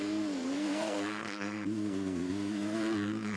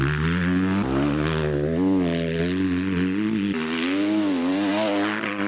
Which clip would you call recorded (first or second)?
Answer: second